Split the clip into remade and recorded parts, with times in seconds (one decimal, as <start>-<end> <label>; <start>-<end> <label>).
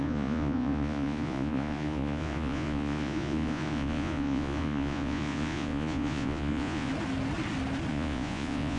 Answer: 0.0-6.9 remade; 6.9-7.9 recorded; 7.9-8.8 remade